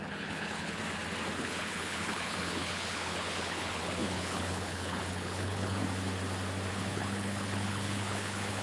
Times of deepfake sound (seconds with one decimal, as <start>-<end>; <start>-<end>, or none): 0.0-0.8; 1.4-5.8; 6.7-8.6